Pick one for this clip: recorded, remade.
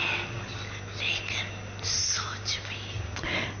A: recorded